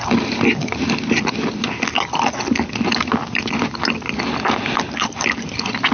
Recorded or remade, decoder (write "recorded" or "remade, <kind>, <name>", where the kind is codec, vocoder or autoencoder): recorded